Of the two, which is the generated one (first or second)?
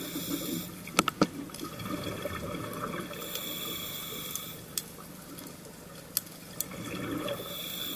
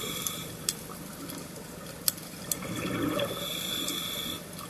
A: second